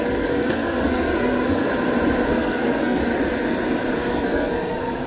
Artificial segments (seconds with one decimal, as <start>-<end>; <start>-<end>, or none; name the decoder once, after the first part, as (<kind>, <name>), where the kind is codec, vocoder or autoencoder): 0.0-1.7 (codec, SNAC); 2.3-3.0; 3.9-5.1